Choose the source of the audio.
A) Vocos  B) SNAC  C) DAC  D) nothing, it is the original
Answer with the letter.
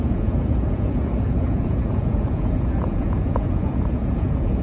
A